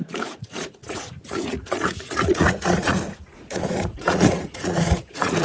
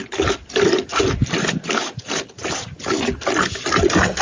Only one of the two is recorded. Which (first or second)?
second